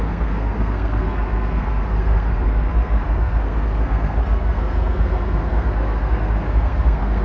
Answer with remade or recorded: remade